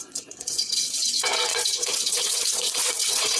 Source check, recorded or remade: remade